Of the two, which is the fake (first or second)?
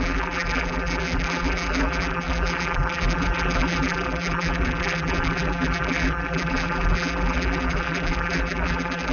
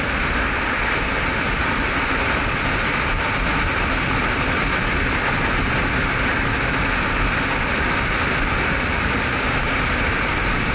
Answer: first